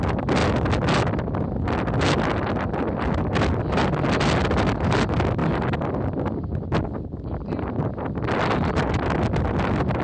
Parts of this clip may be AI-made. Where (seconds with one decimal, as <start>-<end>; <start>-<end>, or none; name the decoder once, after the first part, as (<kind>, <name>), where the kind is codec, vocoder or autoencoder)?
none